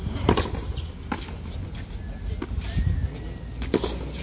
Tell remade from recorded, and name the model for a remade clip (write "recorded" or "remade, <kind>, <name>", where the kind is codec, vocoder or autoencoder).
recorded